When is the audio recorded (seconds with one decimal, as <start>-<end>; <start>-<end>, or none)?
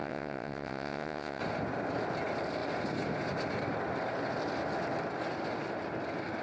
1.4-6.4